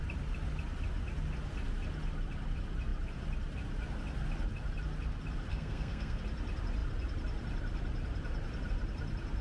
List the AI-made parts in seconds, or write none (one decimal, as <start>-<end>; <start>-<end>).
5.5-6.2